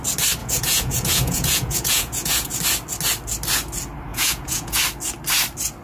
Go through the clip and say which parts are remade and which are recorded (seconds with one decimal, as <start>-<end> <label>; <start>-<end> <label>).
0.0-0.4 recorded; 0.4-2.6 remade; 2.6-4.1 recorded; 4.1-4.8 remade; 4.8-5.8 recorded